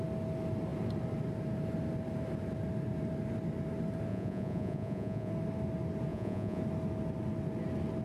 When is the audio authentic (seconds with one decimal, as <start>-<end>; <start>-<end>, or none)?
0.0-4.1; 5.3-6.1; 6.6-8.0